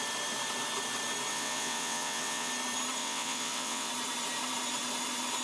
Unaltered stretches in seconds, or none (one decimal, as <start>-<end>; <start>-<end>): 0.0-1.3; 2.5-3.0; 3.9-5.4